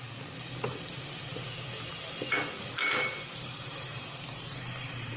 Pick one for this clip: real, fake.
real